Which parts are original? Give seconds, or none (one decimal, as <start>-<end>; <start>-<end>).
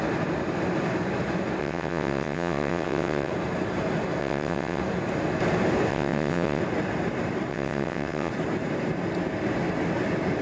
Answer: 0.0-1.6; 3.3-4.2; 4.8-5.9; 6.6-7.5; 8.3-10.4